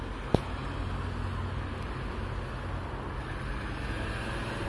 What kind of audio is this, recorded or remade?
recorded